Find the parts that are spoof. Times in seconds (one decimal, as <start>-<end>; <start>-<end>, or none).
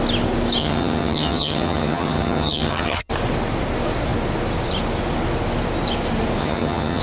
0.6-3.1; 6.4-7.0